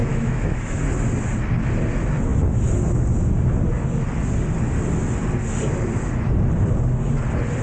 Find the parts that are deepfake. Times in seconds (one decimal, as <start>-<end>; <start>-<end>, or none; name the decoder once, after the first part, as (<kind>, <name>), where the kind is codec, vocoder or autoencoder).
0.0-0.8 (autoencoder, DAC-VAE)